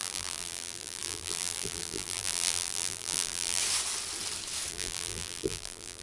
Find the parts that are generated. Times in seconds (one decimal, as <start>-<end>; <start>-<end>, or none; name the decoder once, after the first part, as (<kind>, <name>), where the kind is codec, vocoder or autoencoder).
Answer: 0.0-3.6 (vocoder, BigVGAN v2); 4.7-6.0